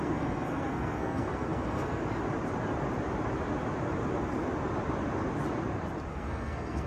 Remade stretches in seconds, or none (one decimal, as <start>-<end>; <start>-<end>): 0.0-2.0; 6.1-6.9